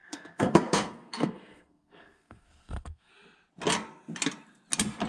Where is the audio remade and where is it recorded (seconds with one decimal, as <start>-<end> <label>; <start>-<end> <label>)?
0.0-3.1 remade; 3.1-5.1 recorded